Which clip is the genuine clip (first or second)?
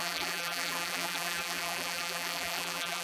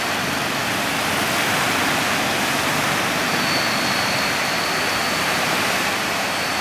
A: second